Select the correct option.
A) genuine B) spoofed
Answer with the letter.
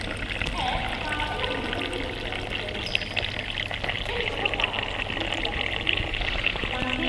A